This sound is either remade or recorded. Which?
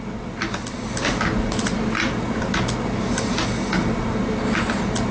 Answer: recorded